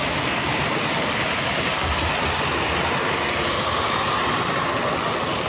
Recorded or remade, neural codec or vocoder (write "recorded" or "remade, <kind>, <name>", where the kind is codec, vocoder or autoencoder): recorded